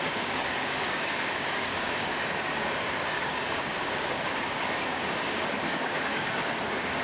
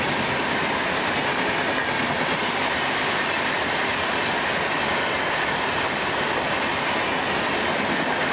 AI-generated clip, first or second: first